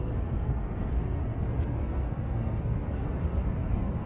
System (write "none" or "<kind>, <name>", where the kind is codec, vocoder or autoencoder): codec, SNAC